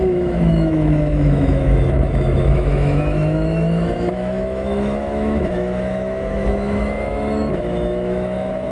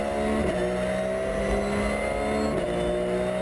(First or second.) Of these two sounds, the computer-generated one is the first